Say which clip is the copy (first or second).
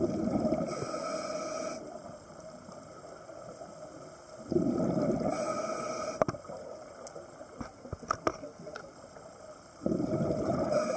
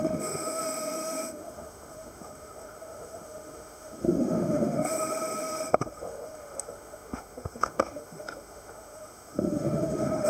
second